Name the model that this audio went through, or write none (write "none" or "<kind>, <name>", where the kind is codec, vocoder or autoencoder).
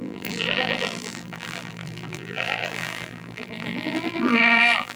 vocoder, BigVGAN v2